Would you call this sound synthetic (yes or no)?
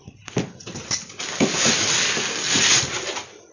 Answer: no